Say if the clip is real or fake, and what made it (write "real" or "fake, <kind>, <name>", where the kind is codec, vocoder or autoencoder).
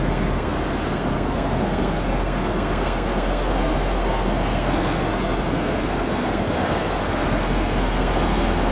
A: fake, codec, SNAC